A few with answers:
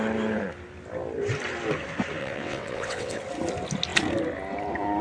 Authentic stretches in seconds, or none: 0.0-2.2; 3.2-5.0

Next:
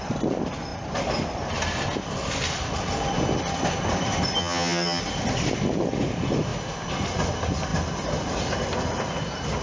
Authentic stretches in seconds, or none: 0.0-4.4; 5.0-9.6

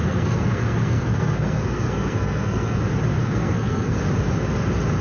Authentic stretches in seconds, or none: 2.8-3.2; 4.0-5.0

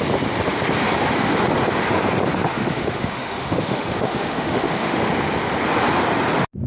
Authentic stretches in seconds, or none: 0.0-2.5; 5.1-6.7

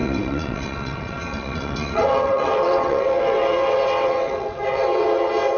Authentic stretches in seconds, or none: none

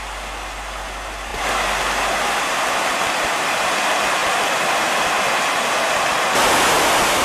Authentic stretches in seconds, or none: 0.0-7.2

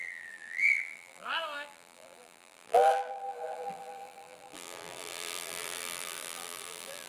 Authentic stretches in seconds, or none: none

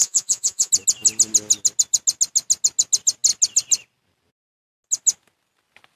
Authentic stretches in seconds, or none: 0.7-6.0